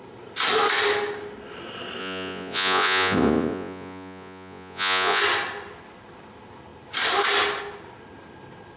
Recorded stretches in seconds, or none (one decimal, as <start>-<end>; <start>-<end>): 0.0-2.0; 5.2-8.8